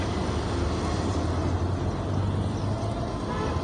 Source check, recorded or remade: recorded